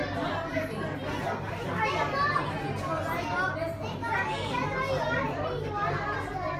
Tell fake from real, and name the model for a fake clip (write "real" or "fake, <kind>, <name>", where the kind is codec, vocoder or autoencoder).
real